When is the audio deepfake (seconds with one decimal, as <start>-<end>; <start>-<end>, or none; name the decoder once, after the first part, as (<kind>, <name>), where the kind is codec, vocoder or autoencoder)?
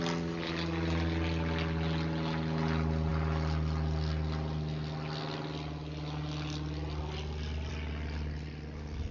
none